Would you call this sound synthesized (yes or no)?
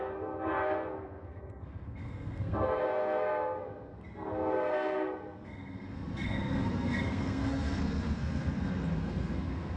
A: yes